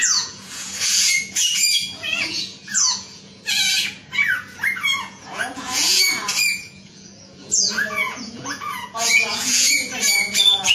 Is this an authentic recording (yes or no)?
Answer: no